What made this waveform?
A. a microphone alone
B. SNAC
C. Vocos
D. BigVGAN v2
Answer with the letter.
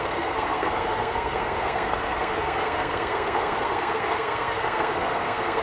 B